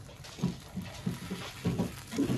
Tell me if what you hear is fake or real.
real